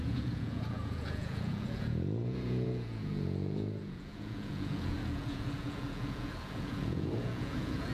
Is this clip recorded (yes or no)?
no